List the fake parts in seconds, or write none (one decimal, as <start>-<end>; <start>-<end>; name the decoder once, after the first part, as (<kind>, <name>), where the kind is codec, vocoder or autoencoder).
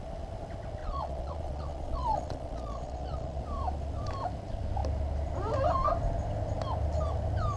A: 0.8-3.4 (vocoder, Vocos)